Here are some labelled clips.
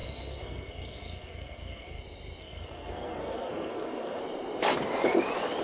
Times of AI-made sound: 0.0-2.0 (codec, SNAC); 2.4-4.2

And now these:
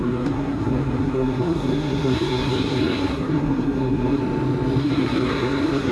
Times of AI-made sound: 0.0-4.2 (codec, SNAC); 4.8-5.9

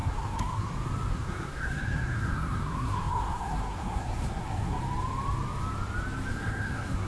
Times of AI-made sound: 0.0-0.7 (codec, SNAC); 1.1-4.8; 6.3-7.1

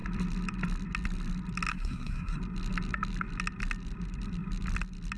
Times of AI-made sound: 1.7-2.4 (codec, SNAC)